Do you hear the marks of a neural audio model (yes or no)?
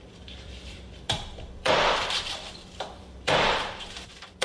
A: yes